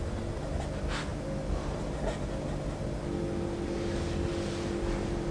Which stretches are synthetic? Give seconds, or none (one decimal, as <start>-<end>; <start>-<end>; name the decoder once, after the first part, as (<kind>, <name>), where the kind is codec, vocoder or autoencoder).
none